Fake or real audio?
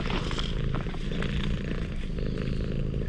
real